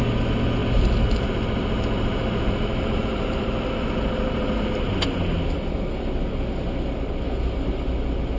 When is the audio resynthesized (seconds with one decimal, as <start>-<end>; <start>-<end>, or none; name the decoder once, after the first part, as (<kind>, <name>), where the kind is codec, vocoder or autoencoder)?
0.6-4.9 (vocoder, BigVGAN v2)